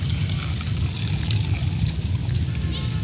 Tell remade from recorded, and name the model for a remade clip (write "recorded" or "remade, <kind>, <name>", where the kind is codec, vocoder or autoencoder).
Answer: recorded